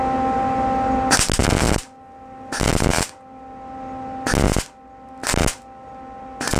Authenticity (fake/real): real